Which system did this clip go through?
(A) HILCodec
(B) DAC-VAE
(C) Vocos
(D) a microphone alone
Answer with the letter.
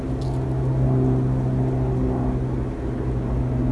D